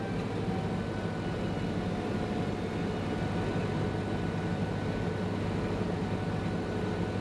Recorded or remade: recorded